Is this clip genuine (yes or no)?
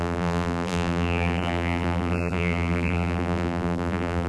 no